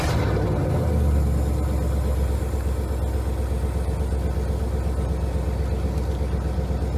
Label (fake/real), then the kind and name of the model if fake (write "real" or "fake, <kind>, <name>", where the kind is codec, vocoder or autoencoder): real